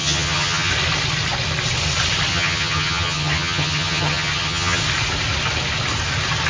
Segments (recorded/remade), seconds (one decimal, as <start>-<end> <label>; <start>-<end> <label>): 0.0-0.7 remade; 0.7-2.3 recorded; 2.3-4.8 remade; 4.8-6.5 recorded